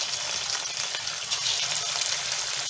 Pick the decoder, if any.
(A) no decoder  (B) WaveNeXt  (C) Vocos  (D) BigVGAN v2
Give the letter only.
A